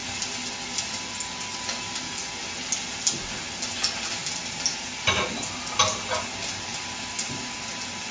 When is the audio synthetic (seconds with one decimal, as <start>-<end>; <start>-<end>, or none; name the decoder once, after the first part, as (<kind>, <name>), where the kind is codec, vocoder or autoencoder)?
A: none